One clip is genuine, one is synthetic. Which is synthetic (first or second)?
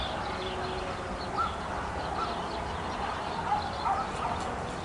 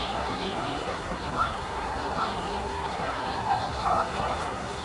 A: second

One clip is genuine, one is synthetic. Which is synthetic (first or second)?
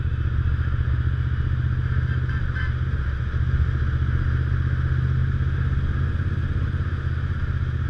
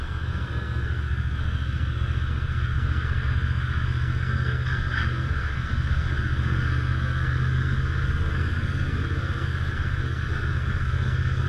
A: second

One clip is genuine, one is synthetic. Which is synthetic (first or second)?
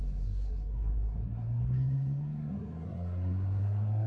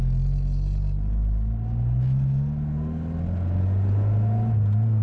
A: first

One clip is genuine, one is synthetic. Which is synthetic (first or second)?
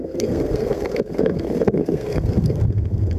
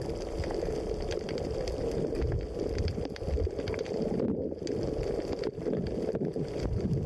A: first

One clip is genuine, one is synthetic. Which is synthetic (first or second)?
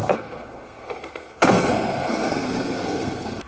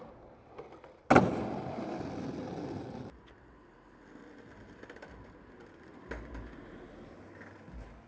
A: first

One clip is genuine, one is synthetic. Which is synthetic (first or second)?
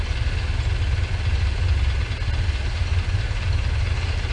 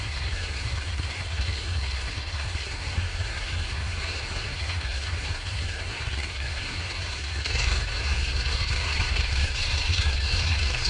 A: second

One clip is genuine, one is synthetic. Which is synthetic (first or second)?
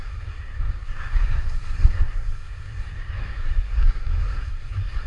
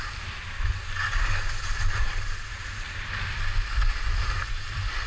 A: first